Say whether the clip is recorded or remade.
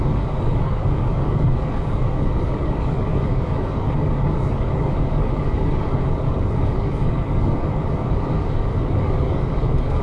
remade